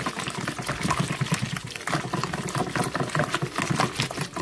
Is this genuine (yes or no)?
yes